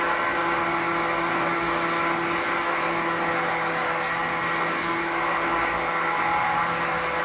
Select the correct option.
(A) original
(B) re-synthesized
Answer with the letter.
A